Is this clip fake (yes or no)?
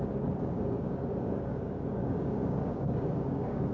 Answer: yes